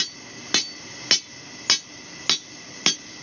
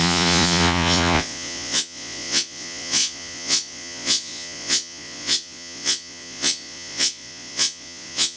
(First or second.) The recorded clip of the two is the first